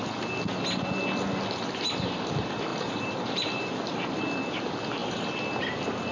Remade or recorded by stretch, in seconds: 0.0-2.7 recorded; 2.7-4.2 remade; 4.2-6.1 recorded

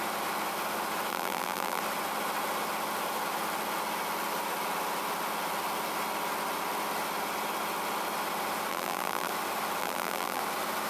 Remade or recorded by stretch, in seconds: 0.0-1.1 recorded; 1.1-1.8 remade; 1.8-8.7 recorded; 8.7-9.3 remade; 9.3-9.8 recorded; 9.8-10.4 remade; 10.4-10.9 recorded

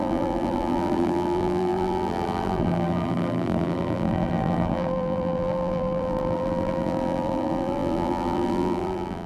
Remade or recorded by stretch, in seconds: 0.0-9.3 remade

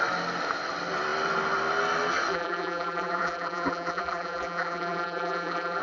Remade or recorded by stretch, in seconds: 0.0-2.3 recorded; 2.3-5.8 remade

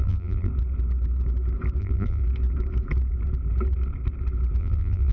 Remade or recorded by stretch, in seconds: 0.0-0.5 remade; 0.5-1.8 recorded; 1.8-2.2 remade; 2.2-4.6 recorded; 4.6-5.1 remade

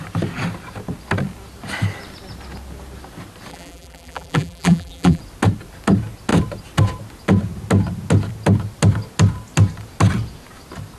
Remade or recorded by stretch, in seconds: 0.0-3.5 recorded; 3.5-5.2 remade; 5.2-11.0 recorded